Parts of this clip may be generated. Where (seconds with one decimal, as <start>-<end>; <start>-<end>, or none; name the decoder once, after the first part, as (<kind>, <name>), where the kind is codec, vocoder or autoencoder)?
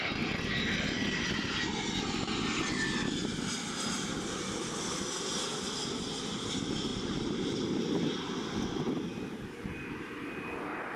6.9-7.8 (vocoder, BigVGAN v2); 9.1-10.1